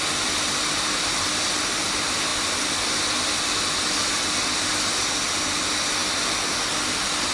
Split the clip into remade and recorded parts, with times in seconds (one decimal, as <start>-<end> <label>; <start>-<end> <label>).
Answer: 0.0-7.3 recorded